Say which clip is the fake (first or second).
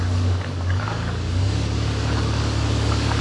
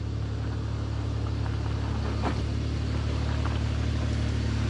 first